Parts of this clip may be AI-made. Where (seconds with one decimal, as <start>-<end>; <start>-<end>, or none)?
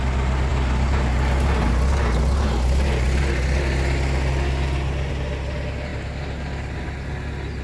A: none